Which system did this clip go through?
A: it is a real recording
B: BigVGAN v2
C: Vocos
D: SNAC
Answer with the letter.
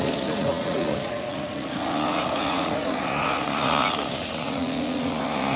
C